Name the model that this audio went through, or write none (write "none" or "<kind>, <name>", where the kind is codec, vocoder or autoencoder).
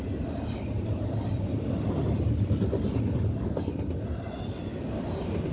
vocoder, BigVGAN v2